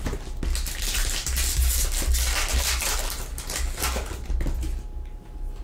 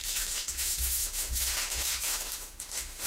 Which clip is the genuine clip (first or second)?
first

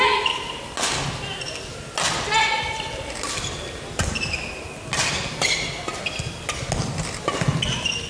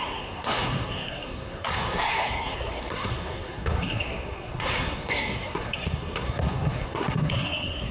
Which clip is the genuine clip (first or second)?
first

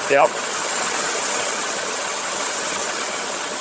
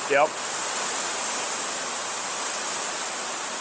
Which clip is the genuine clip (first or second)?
second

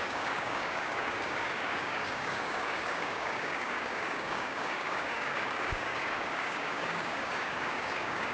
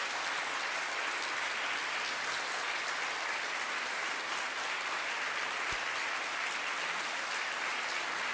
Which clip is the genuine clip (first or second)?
second